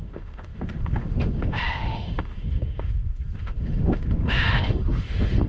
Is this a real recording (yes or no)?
no